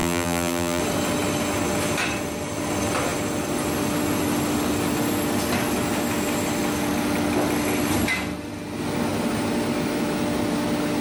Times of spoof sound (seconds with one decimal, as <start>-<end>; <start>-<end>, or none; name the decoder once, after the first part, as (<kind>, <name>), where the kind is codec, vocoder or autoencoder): 0.0-0.8 (vocoder, BigVGAN v2)

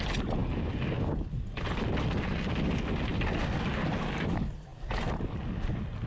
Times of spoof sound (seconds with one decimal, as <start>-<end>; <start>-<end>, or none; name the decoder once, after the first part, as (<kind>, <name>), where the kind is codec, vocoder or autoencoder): none